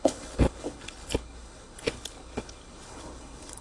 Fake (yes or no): yes